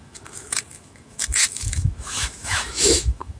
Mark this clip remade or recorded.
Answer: remade